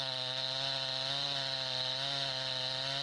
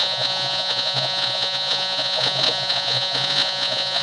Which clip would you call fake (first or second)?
second